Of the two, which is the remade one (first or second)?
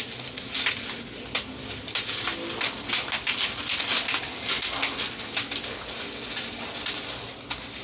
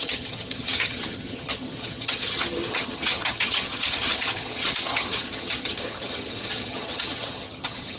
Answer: second